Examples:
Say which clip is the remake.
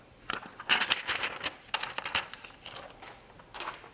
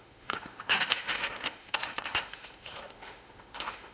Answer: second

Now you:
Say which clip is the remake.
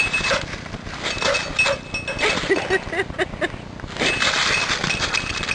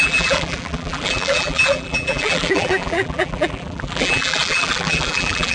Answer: second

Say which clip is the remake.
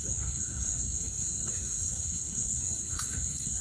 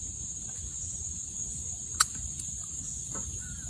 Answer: first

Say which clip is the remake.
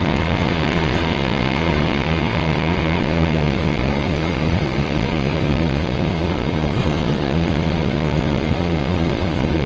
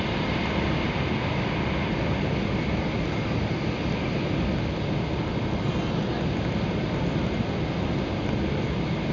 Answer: first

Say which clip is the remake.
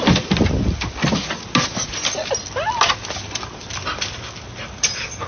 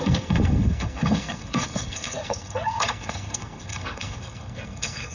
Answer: second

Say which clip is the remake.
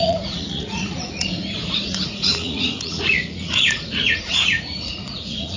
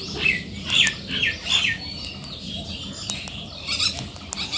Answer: first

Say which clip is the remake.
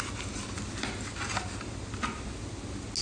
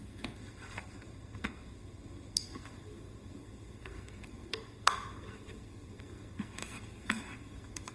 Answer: second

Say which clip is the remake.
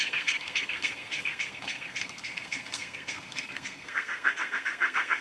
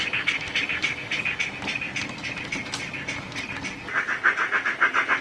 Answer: first